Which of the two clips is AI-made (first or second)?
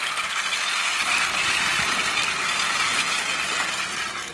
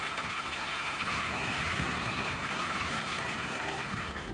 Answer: second